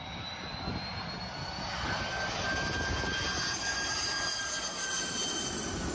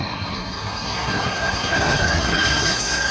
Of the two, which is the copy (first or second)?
second